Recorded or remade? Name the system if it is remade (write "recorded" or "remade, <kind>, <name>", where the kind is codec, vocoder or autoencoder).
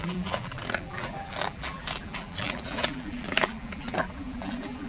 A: remade, vocoder, BigVGAN v2